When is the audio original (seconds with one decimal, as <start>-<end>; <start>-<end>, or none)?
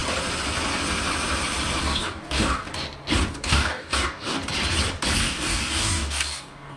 0.0-1.8; 2.7-3.3; 4.4-5.2